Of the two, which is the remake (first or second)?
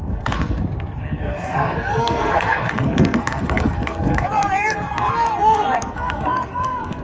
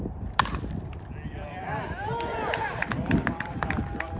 first